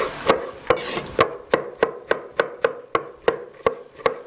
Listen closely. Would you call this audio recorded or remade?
recorded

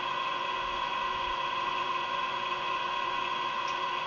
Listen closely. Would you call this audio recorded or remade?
remade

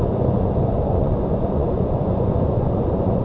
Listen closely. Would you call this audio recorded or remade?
remade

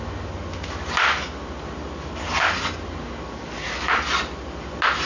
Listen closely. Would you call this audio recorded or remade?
recorded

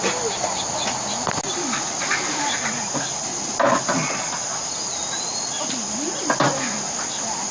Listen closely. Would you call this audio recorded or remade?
recorded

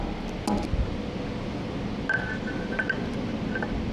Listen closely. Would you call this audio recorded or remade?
recorded